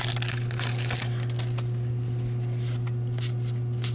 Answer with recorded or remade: recorded